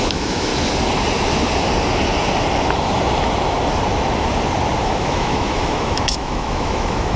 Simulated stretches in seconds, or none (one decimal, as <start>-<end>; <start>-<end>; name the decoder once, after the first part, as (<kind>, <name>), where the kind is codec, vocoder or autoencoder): 0.0-0.5 (autoencoder, DAC-VAE); 4.8-7.2